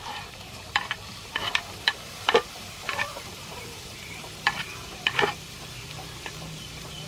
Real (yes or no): no